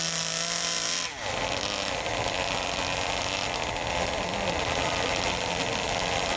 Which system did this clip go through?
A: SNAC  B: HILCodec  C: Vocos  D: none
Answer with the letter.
D